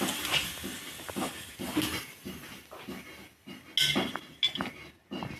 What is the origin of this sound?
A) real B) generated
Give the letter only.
A